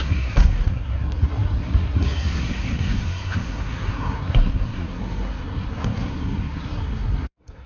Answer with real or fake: fake